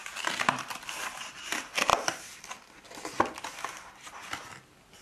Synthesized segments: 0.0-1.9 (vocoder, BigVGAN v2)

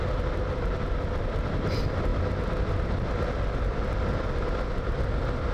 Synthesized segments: none

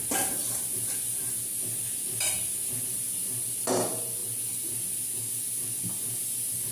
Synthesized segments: 0.0-4.2 (vocoder, BigVGAN v2); 5.8-6.7

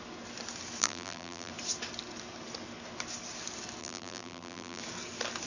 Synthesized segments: 0.8-1.5 (vocoder, BigVGAN v2); 3.8-4.8